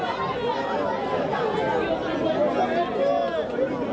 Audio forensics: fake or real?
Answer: real